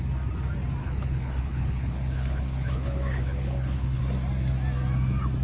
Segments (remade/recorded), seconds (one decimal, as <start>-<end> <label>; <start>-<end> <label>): 0.0-0.8 recorded; 0.8-4.0 remade; 4.0-5.4 recorded